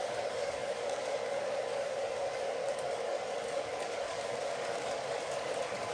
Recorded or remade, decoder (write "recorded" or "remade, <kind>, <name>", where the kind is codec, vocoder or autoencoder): remade, codec, DAC